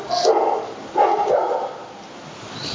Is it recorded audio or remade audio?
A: recorded